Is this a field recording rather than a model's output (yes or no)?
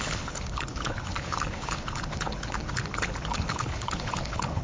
no